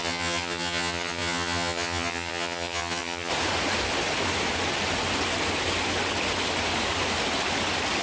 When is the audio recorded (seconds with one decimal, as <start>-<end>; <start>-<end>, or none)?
3.3-8.0